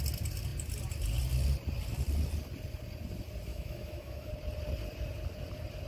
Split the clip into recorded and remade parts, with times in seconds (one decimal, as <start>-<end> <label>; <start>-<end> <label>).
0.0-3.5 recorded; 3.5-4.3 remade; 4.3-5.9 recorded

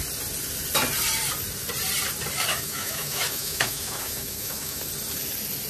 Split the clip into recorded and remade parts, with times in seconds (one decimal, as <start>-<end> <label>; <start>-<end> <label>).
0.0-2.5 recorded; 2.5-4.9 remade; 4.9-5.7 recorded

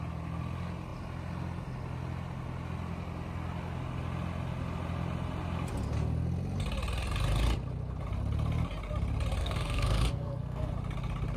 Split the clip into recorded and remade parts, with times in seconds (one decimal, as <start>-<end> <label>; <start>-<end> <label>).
0.0-9.4 recorded; 9.4-10.7 remade; 10.7-11.4 recorded

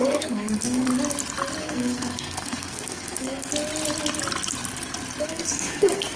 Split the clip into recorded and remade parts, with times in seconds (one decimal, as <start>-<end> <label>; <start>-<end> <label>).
0.0-0.9 remade; 0.9-1.6 recorded; 1.6-3.5 remade; 3.5-5.2 recorded; 5.2-6.2 remade

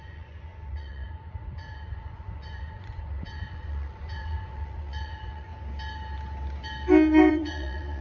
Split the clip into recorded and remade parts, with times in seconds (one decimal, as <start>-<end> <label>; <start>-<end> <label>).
0.0-5.5 remade; 5.5-7.3 recorded; 7.3-8.0 remade

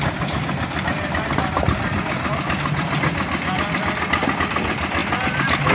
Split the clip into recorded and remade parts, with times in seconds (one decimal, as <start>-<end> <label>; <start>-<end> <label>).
0.0-5.7 recorded

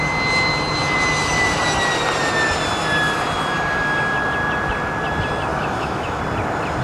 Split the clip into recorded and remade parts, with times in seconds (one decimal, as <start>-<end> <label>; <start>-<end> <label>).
0.0-5.5 recorded; 5.5-6.2 remade; 6.2-6.8 recorded